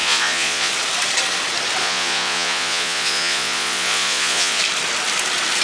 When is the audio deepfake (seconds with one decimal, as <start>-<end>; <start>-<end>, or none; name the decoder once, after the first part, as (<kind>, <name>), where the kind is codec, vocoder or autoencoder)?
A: 0.0-0.7 (vocoder, Vocos); 1.8-4.6